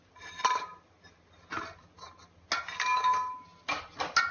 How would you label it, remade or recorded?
recorded